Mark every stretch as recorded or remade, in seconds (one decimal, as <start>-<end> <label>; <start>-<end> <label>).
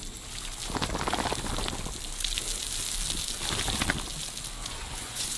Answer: 0.0-4.6 recorded; 4.6-5.4 remade